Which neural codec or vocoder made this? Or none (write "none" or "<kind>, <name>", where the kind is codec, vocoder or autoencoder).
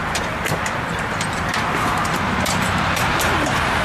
vocoder, BigVGAN v2